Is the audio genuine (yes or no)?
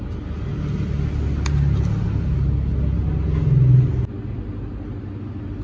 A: yes